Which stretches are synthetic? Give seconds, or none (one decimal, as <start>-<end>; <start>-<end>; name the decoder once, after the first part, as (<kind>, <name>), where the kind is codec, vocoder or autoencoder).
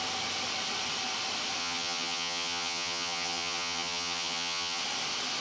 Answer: 1.6-4.8 (vocoder, HiFi-GAN)